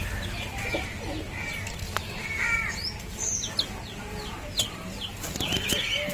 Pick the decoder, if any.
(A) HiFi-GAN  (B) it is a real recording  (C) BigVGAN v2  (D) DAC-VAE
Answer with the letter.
B